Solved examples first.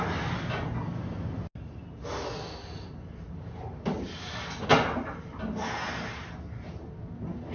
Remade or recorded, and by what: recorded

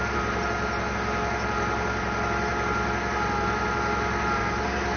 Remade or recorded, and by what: recorded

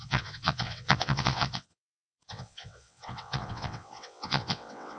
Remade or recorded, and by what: remade, vocoder, WaveNeXt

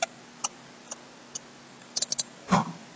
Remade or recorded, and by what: recorded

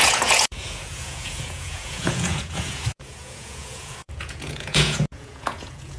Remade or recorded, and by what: remade, vocoder, Vocos